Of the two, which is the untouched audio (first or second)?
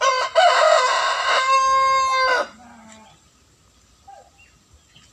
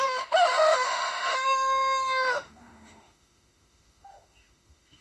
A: first